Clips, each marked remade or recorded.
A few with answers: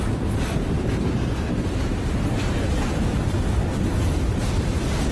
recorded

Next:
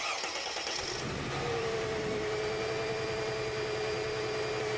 recorded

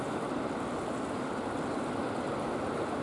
recorded